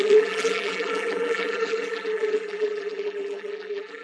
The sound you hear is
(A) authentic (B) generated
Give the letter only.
B